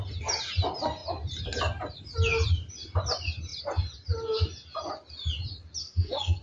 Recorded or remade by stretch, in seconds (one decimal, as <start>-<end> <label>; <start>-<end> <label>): 0.0-5.8 recorded; 5.8-6.4 remade